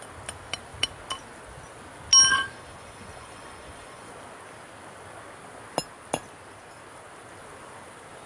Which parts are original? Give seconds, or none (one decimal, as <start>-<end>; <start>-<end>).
0.0-2.3; 4.1-8.3

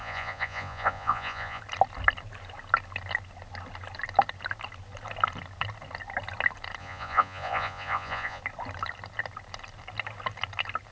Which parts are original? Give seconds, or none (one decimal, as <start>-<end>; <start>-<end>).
1.6-6.8; 8.4-10.9

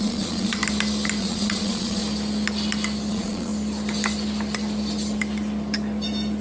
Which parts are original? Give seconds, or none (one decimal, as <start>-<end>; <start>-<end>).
0.6-1.2; 2.0-3.1; 3.5-6.4

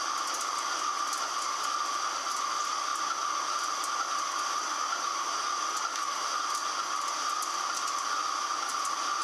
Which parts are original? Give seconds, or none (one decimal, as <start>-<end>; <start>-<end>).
0.0-9.2

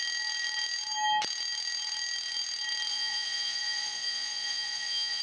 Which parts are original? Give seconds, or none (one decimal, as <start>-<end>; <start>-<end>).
0.0-2.9

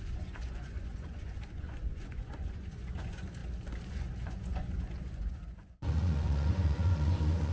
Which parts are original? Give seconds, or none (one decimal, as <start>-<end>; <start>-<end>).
3.4-3.9

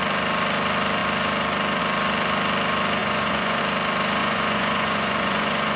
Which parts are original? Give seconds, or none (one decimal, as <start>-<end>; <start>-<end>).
0.0-3.0; 3.6-4.2